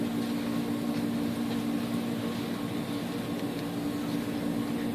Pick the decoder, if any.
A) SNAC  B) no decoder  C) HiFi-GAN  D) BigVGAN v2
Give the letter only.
B